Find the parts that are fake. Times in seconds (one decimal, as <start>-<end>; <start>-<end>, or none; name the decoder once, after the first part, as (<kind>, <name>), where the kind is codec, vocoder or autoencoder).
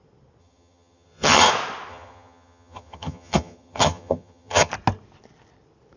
0.4-1.5 (vocoder, HiFi-GAN); 1.9-4.7